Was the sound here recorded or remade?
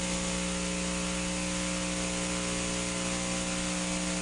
recorded